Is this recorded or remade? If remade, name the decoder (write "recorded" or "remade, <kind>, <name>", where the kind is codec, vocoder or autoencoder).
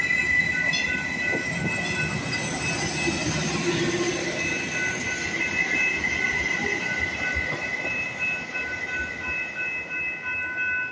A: recorded